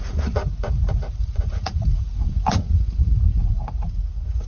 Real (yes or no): no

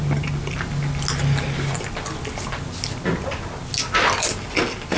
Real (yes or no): yes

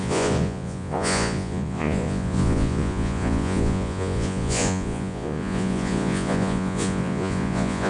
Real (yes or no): no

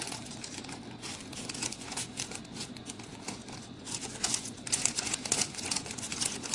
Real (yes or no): no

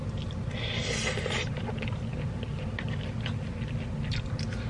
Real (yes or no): yes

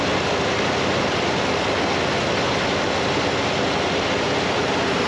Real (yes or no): yes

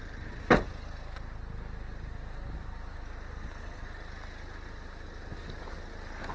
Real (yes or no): yes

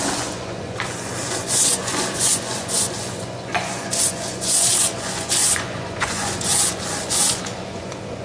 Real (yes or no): no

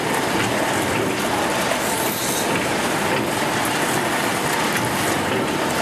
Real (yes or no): yes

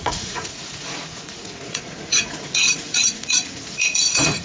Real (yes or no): no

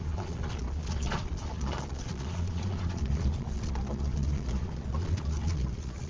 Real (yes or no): no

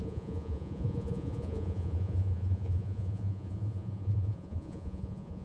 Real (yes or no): no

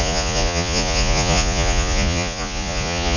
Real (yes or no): no